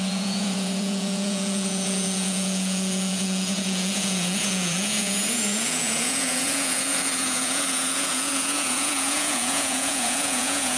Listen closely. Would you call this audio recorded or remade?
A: remade